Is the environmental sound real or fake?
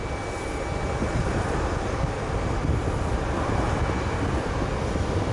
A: real